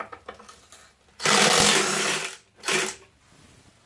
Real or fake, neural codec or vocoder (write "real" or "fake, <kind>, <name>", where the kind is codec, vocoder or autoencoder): real